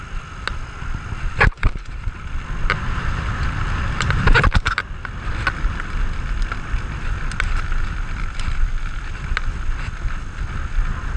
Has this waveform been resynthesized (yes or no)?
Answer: no